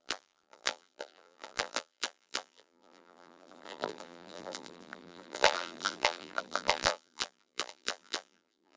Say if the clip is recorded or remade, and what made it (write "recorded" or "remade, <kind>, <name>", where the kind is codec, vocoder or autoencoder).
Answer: remade, vocoder, BigVGAN v2